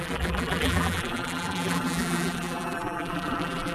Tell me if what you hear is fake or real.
fake